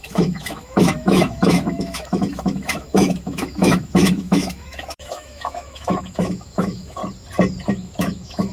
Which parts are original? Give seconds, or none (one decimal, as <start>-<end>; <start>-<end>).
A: 7.0-7.7